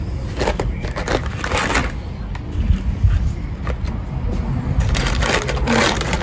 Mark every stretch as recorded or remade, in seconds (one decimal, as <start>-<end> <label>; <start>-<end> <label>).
0.0-6.2 recorded